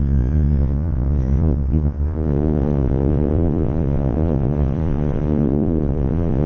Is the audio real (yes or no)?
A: no